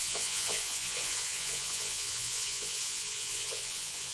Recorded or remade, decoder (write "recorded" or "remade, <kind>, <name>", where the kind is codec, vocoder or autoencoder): remade, vocoder, Vocos